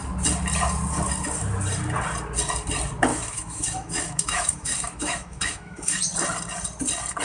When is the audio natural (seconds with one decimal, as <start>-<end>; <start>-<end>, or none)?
0.0-3.1; 6.0-7.2